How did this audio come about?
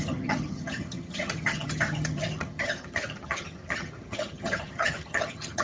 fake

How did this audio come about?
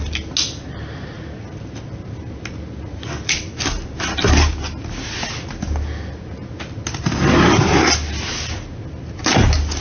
real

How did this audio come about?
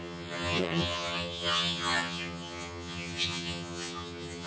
fake